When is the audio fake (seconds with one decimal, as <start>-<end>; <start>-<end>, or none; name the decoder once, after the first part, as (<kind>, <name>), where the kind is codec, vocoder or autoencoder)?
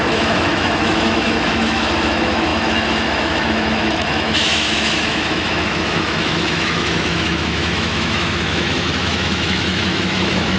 0.0-10.6 (autoencoder, DAC-VAE)